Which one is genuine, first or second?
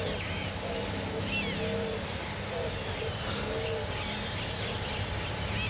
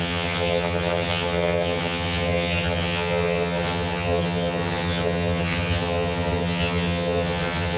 first